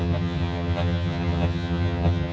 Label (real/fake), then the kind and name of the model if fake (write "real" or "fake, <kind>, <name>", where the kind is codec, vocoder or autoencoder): fake, vocoder, HiFi-GAN